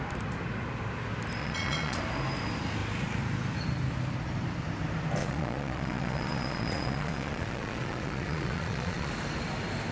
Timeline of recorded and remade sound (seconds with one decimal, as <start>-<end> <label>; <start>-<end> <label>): 0.0-1.4 recorded; 1.4-2.0 remade; 2.0-5.2 recorded; 5.2-9.1 remade; 9.1-9.9 recorded